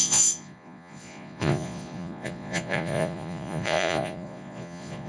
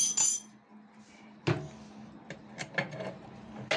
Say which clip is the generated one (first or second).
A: first